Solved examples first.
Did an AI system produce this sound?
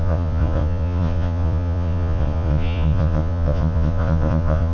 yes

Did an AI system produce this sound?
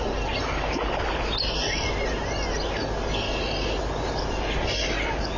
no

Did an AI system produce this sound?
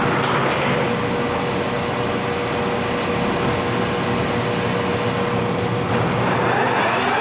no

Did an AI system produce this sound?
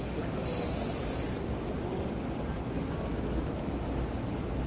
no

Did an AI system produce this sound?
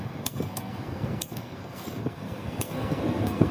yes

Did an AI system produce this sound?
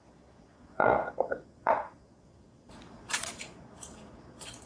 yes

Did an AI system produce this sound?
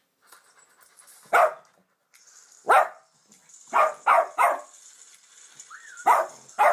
no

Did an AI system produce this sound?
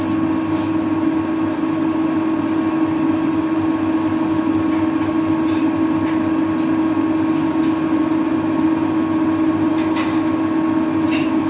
no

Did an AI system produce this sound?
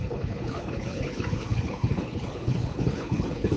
yes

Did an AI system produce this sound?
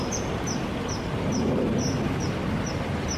no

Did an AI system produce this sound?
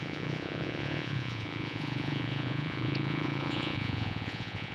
yes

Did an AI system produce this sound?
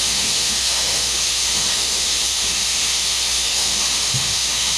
yes